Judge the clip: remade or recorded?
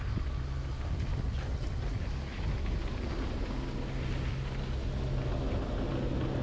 recorded